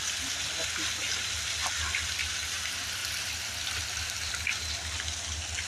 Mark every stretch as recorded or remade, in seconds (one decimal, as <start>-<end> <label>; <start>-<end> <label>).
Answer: 0.0-3.0 recorded; 3.0-4.3 remade; 4.3-5.7 recorded